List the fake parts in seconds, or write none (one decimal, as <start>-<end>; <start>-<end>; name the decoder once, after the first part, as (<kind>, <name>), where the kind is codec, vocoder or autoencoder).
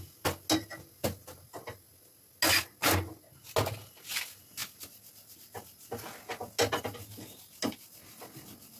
none